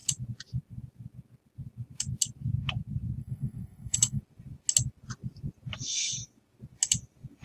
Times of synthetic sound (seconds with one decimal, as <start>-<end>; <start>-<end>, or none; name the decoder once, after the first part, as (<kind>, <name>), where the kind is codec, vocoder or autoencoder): 3.2-4.2 (codec, SNAC)